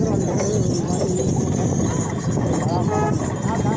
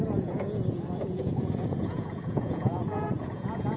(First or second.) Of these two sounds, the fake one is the second